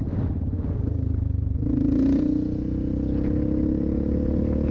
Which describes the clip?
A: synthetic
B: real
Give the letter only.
B